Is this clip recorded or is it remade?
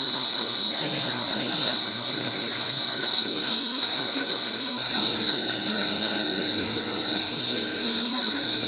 remade